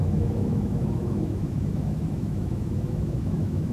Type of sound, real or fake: fake